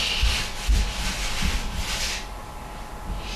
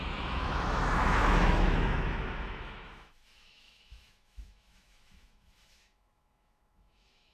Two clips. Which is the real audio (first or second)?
first